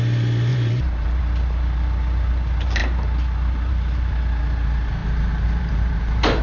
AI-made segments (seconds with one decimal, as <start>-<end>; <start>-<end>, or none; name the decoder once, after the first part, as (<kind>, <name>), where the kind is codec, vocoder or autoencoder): 0.5-1.2 (vocoder, BigVGAN v2); 5.0-6.4